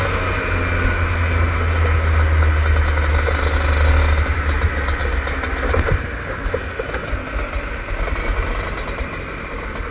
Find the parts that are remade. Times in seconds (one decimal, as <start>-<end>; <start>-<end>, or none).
none